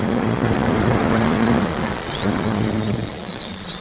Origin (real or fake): fake